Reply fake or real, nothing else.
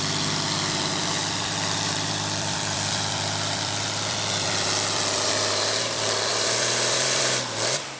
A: fake